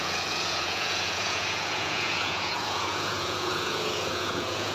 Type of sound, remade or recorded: remade